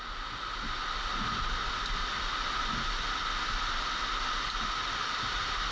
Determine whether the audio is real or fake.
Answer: real